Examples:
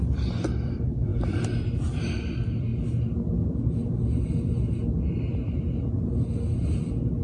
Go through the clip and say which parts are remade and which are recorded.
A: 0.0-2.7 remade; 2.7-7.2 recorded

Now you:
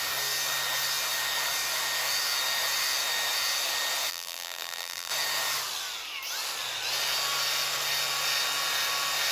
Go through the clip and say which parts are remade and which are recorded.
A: 0.0-4.1 recorded; 4.1-5.1 remade; 5.1-9.3 recorded

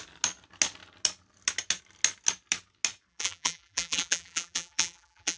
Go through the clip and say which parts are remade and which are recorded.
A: 0.0-3.1 recorded; 3.1-5.4 remade

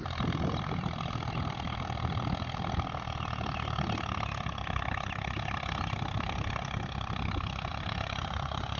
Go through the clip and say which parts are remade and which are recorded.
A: 0.0-7.7 recorded; 7.7-8.8 remade

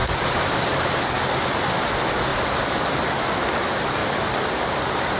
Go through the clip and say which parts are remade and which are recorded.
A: 0.0-1.0 remade; 1.0-4.0 recorded; 4.0-4.8 remade; 4.8-5.2 recorded

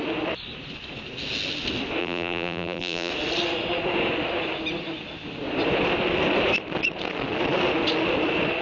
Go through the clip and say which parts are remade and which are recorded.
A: 0.0-2.0 recorded; 2.0-3.1 remade; 3.1-8.6 recorded